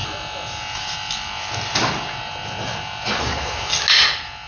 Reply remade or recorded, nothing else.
recorded